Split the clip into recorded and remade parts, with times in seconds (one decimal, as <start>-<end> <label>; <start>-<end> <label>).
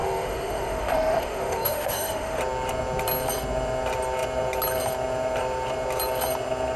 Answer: 0.0-2.4 remade; 2.4-6.8 recorded